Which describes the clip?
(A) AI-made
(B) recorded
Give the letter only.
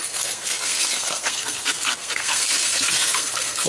A